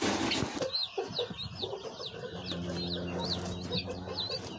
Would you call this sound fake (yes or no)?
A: no